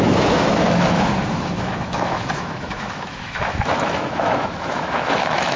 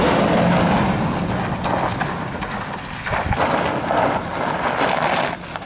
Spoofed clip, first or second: first